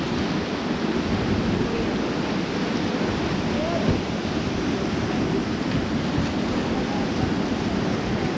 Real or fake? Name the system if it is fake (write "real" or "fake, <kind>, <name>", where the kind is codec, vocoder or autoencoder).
real